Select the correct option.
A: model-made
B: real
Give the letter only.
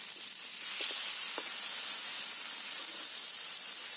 B